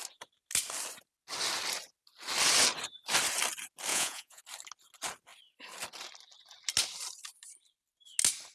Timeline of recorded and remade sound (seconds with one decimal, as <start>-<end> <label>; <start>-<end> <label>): 0.0-3.9 recorded; 3.9-4.4 remade; 4.4-8.5 recorded